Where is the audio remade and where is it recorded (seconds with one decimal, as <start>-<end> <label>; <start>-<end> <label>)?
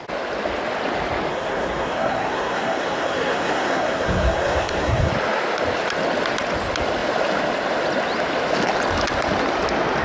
0.0-1.3 recorded; 1.3-5.1 remade; 5.1-10.0 recorded